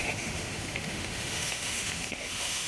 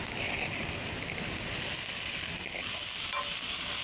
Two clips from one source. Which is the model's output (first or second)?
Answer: first